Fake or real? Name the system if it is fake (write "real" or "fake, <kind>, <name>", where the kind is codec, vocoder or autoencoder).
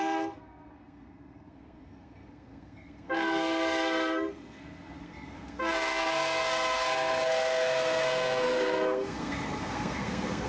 fake, codec, SNAC